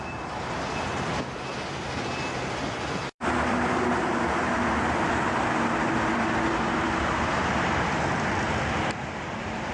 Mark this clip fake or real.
fake